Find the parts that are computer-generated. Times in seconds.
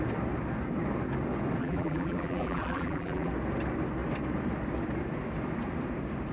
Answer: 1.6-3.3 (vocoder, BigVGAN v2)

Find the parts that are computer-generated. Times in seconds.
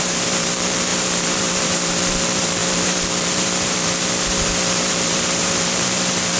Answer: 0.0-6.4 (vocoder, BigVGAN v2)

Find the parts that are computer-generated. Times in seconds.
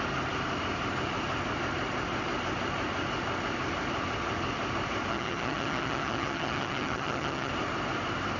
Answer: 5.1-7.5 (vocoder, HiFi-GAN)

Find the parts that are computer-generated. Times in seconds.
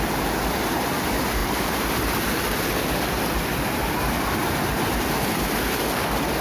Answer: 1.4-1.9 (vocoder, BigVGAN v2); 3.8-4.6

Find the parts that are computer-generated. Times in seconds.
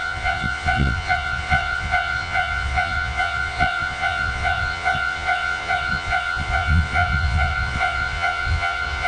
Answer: 0.0-9.1 (vocoder, Vocos)